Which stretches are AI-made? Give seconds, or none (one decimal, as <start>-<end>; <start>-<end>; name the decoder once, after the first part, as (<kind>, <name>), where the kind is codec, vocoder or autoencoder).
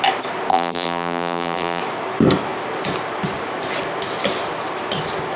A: 0.5-1.8 (vocoder, BigVGAN v2)